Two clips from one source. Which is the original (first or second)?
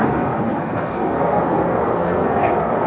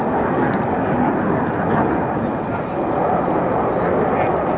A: second